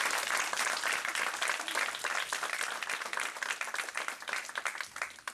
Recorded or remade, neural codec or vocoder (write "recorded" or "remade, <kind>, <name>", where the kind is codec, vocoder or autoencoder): recorded